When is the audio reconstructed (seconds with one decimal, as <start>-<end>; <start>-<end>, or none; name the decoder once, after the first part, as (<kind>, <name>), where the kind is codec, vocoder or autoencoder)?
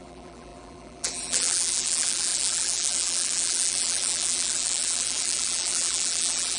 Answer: 0.0-6.6 (vocoder, BigVGAN v2)